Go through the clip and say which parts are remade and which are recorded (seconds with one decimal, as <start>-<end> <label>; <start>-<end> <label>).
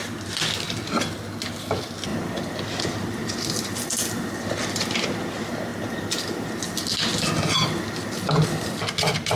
0.0-9.4 recorded